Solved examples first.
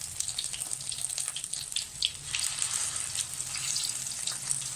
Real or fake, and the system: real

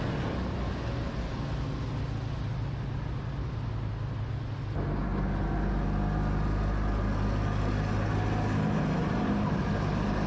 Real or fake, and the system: real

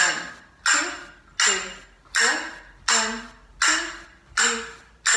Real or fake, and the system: real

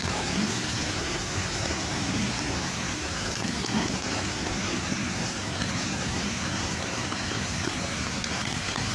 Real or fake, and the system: fake, codec, SNAC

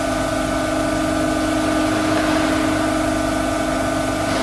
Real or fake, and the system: real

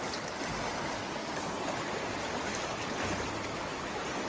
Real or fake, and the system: real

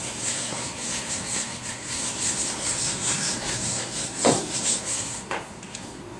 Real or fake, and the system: fake, codec, SNAC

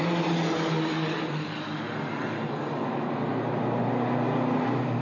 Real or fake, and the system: real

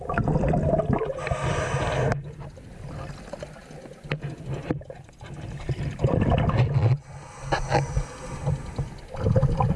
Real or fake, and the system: real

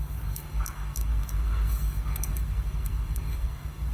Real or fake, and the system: fake, codec, SNAC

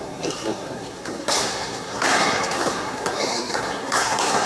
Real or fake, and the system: fake, codec, SNAC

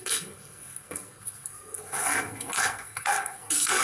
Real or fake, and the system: fake, codec, SNAC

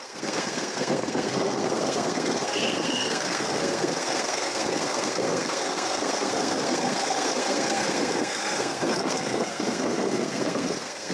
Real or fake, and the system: fake, codec, SNAC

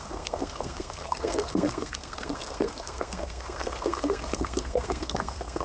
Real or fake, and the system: fake, codec, SNAC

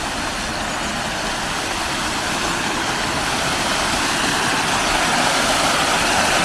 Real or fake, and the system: real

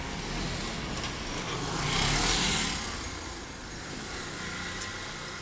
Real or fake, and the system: real